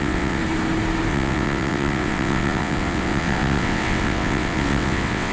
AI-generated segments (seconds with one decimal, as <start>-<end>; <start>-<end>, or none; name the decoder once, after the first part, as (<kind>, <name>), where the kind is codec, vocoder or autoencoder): 0.0-0.4 (vocoder, WaveNeXt); 1.1-5.3